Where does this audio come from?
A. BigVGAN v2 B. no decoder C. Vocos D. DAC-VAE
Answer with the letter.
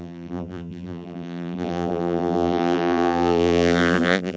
A